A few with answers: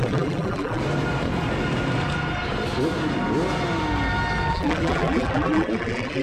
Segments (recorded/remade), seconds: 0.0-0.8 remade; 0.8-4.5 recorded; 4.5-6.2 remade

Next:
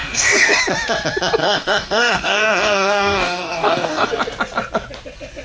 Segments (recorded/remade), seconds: 0.0-0.6 remade; 0.6-1.4 recorded; 1.4-4.1 remade; 4.1-5.4 recorded

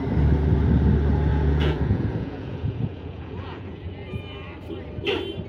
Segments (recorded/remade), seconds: 0.0-1.3 recorded; 1.3-4.2 remade; 4.2-5.5 recorded

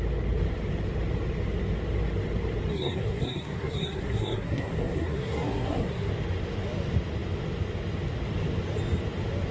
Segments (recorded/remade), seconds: 0.0-2.7 recorded; 2.7-6.1 remade; 6.1-9.5 recorded

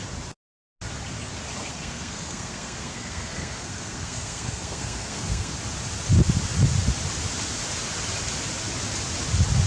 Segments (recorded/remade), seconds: 0.0-1.6 recorded; 1.6-5.5 remade; 5.5-9.7 recorded